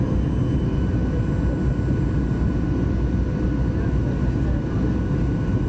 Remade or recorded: recorded